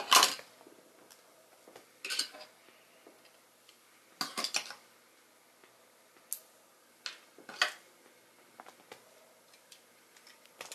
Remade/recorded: recorded